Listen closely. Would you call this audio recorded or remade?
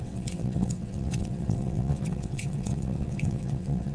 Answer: remade